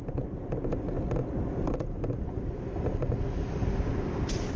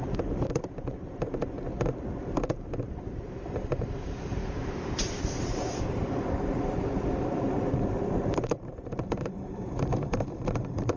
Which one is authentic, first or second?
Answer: first